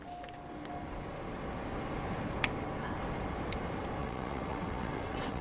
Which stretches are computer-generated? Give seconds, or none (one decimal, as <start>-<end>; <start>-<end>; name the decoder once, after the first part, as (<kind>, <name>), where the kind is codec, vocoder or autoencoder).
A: 4.0-5.4 (vocoder, WaveNeXt)